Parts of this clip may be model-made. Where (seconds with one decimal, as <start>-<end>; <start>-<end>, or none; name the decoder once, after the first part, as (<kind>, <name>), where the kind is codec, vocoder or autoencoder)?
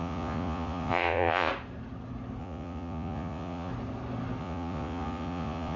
0.0-1.5 (vocoder, Vocos); 2.4-3.7; 4.4-5.8